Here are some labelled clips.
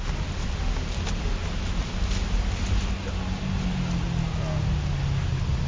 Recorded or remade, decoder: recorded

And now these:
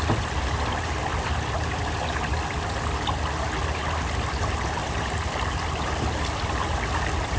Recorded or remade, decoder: recorded